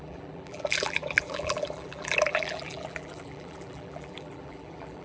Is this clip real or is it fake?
fake